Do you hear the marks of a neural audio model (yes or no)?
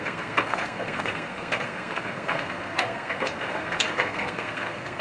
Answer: yes